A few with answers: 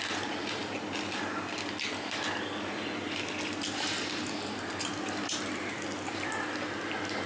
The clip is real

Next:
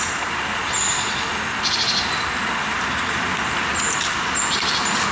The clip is real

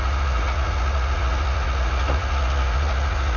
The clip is fake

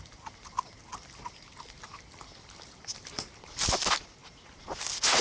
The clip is real